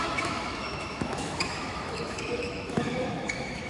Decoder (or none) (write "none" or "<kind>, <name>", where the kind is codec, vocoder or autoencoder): autoencoder, DAC-VAE